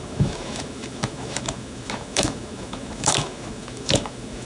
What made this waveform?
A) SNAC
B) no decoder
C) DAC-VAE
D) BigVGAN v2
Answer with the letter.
C